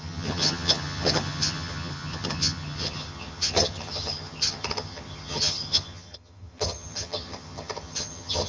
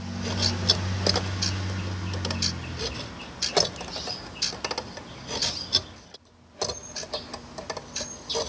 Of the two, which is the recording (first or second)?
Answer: second